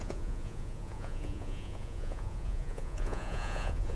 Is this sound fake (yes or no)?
yes